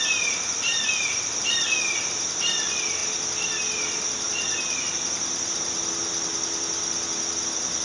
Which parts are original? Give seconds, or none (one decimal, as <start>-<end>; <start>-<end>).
0.0-7.8